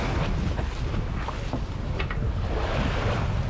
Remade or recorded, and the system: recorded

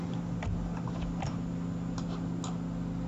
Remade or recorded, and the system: recorded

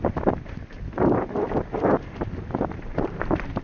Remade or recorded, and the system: remade, vocoder, BigVGAN v2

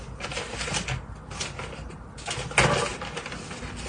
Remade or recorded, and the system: recorded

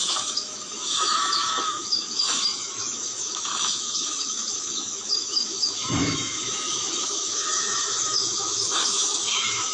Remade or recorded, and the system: remade, autoencoder, DAC-VAE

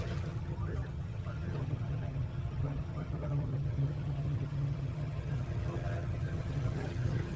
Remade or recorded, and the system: remade, vocoder, HiFi-GAN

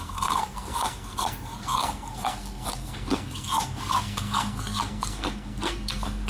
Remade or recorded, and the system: remade, codec, SNAC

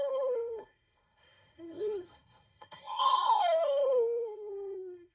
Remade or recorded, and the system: remade, codec, SNAC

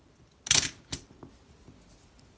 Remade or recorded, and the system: recorded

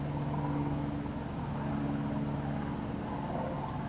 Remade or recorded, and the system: recorded